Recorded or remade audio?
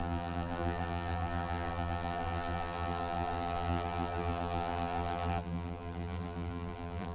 remade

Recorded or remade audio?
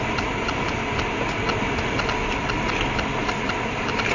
recorded